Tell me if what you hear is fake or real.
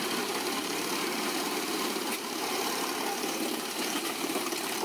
fake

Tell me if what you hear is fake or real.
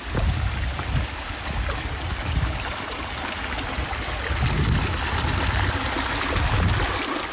real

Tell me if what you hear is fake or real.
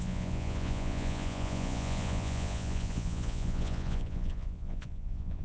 fake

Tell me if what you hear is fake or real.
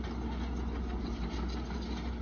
real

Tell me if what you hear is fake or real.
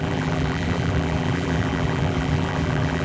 fake